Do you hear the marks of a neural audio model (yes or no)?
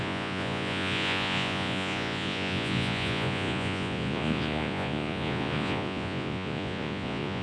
yes